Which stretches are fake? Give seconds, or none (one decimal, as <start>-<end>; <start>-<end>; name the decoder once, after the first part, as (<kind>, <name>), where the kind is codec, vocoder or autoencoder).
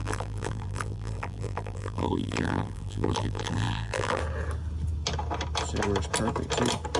0.0-4.2 (vocoder, BigVGAN v2)